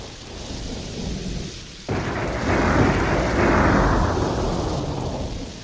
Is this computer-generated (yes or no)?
no